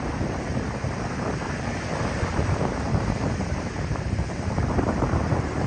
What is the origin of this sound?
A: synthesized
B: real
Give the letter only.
A